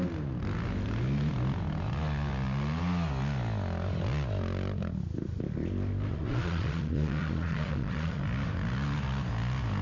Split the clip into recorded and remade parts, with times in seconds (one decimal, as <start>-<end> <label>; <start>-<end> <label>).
0.0-6.1 recorded; 6.1-8.2 remade; 8.2-9.8 recorded

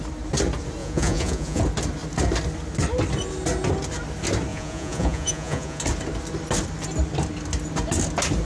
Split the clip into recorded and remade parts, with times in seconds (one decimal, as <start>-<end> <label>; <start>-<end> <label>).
0.0-0.8 recorded; 0.8-1.6 remade; 1.6-4.5 recorded; 4.5-5.8 remade; 5.8-8.4 recorded

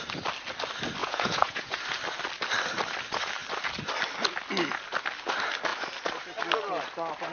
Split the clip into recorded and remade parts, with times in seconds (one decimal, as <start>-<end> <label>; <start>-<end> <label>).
0.0-1.0 recorded; 1.0-1.8 remade; 1.8-7.3 recorded

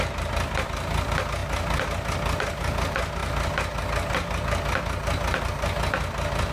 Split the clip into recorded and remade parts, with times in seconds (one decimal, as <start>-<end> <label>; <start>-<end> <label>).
0.0-6.5 recorded

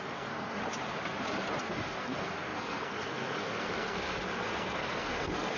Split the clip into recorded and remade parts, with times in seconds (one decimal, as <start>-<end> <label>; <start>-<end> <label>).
0.0-0.6 remade; 0.6-1.6 recorded; 1.6-5.6 remade

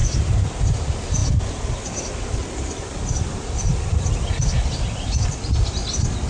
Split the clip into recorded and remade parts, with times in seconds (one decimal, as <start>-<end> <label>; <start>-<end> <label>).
0.0-6.3 recorded

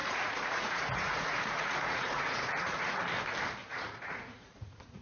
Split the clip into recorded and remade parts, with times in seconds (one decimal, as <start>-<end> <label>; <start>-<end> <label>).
0.0-3.0 remade; 3.0-3.6 recorded; 3.6-5.0 remade